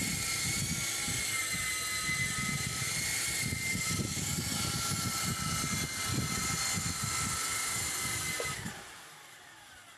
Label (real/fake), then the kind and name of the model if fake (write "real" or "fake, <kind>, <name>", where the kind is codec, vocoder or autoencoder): real